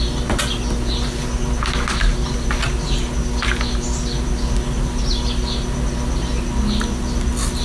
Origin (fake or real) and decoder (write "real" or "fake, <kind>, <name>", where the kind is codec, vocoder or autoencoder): real